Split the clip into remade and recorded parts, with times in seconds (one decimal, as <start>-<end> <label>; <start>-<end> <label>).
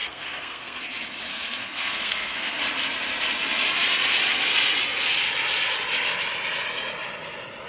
0.0-0.8 remade; 0.8-1.3 recorded; 1.3-2.6 remade; 2.6-7.7 recorded